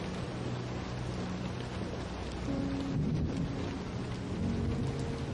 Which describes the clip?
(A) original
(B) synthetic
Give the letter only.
A